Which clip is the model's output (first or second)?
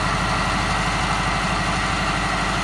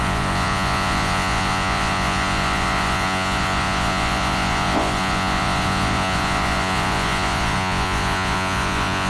second